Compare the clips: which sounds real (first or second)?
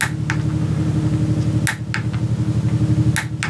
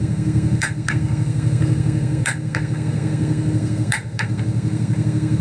first